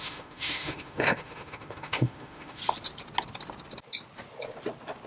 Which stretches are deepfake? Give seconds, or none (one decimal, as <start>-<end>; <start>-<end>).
0.0-2.6